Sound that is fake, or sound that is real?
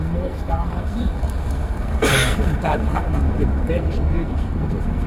fake